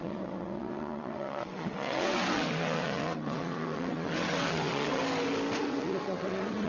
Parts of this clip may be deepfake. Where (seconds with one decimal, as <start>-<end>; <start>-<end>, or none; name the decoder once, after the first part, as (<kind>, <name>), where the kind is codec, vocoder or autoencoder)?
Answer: 0.0-5.0 (vocoder, WaveNeXt); 5.6-6.7